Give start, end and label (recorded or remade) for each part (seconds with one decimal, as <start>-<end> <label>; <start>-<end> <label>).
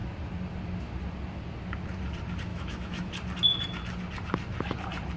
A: 0.0-2.5 recorded; 2.5-3.1 remade; 3.1-5.2 recorded